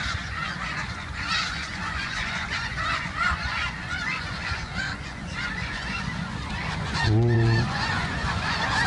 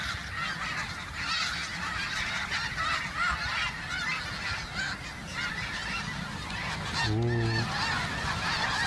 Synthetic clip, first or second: first